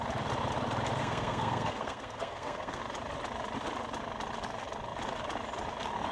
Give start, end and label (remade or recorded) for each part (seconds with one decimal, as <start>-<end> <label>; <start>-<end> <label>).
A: 0.0-1.0 recorded; 1.0-2.8 remade; 2.8-6.1 recorded